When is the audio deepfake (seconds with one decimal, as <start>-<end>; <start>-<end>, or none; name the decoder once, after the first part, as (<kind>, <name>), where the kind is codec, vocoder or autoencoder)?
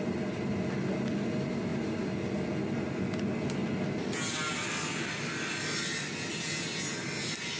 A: none